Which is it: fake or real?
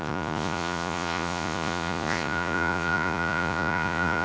fake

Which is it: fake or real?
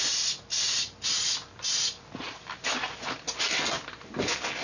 real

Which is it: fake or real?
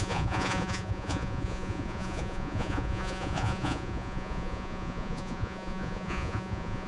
fake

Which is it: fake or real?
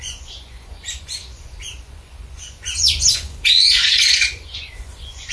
fake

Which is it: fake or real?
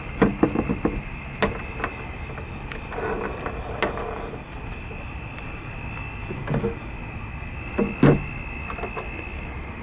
real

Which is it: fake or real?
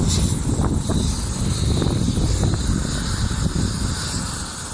real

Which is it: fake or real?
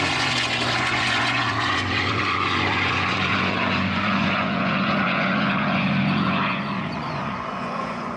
fake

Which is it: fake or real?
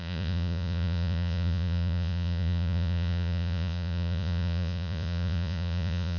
fake